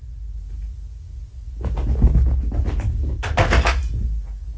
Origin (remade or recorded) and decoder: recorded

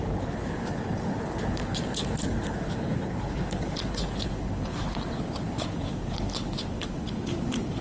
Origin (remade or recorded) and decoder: remade, codec, HILCodec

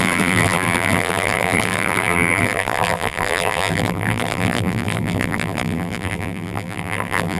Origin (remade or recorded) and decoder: remade, vocoder, BigVGAN v2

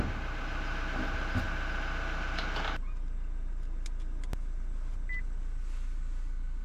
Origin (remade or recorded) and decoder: recorded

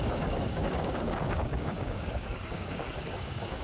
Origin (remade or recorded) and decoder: remade, codec, DAC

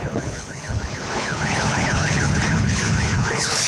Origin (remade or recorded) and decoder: remade, codec, HILCodec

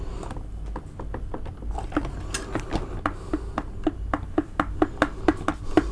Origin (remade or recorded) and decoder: recorded